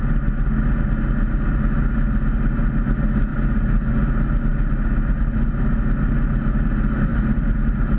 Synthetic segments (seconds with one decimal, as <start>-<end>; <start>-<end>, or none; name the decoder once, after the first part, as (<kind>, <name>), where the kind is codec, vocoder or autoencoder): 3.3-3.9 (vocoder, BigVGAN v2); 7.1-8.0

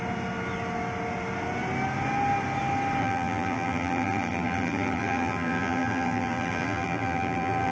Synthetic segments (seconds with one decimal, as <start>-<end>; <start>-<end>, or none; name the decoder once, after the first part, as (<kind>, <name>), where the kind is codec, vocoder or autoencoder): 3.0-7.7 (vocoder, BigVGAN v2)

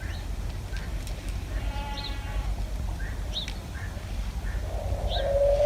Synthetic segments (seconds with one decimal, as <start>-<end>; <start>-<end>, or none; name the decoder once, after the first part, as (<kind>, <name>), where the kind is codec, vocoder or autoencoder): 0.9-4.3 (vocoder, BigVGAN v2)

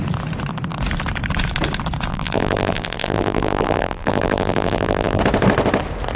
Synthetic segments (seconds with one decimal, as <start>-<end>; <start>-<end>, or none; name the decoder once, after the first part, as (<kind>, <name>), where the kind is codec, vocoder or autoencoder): 2.1-5.2 (vocoder, BigVGAN v2)

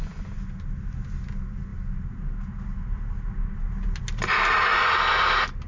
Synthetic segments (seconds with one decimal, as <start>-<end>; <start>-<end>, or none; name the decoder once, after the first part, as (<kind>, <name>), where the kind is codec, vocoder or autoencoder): none

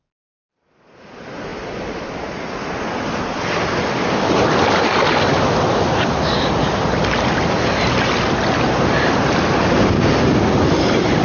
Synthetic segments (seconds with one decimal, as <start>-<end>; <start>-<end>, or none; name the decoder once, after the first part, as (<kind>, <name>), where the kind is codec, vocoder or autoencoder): 1.5-2.2 (vocoder, BigVGAN v2)

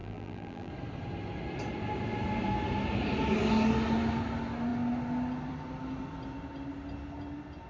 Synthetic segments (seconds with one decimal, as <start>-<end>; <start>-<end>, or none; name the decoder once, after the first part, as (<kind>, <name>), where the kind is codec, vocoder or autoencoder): 0.0-0.7 (vocoder, BigVGAN v2)

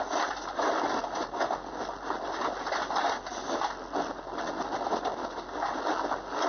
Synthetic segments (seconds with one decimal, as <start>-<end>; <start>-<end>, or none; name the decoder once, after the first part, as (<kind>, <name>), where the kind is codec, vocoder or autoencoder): none